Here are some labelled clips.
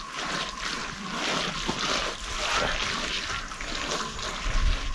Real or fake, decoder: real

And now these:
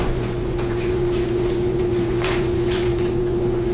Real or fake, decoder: fake, vocoder, Vocos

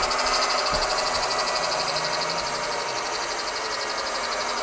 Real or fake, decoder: real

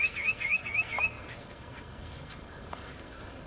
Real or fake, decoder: fake, codec, SNAC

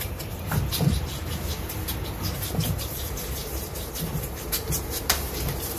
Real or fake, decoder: fake, vocoder, BigVGAN v2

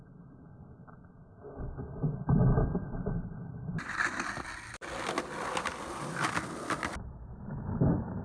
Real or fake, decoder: real